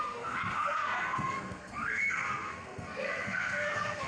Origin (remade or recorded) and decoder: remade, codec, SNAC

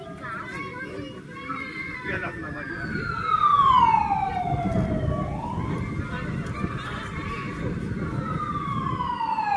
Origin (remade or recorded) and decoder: recorded